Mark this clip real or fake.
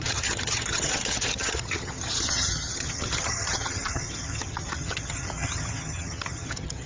fake